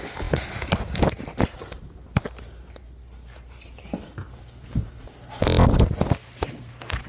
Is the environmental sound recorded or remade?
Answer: recorded